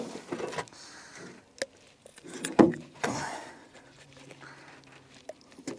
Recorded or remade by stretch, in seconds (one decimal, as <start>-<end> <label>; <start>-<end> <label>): 0.0-2.1 recorded; 2.1-4.1 remade; 4.1-5.8 recorded

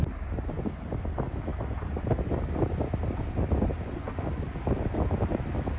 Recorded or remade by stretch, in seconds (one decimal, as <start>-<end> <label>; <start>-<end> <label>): 0.0-5.8 recorded

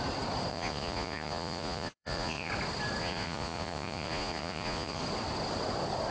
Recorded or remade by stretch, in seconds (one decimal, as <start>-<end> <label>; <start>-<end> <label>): 0.0-0.5 recorded; 0.5-2.5 remade; 2.5-3.0 recorded; 3.0-5.0 remade; 5.0-6.1 recorded

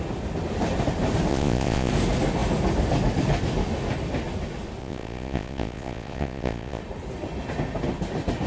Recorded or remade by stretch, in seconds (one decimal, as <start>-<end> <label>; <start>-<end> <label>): 0.0-1.3 recorded; 1.3-1.9 remade; 1.9-4.8 recorded; 4.8-6.8 remade; 6.8-8.5 recorded